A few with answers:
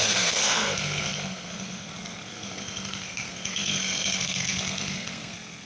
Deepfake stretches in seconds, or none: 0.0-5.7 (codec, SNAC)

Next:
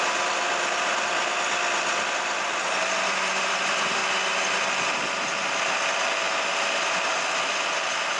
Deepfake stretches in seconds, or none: 0.0-4.0 (vocoder, BigVGAN v2); 7.1-8.2

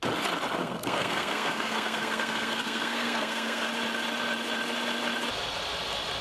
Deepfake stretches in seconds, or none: 0.6-3.7 (codec, SNAC)

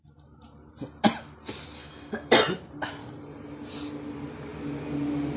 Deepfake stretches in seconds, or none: 1.8-2.3 (autoencoder, DAC-VAE)

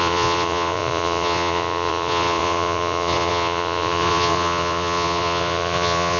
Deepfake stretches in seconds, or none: 0.0-6.2 (vocoder, Vocos)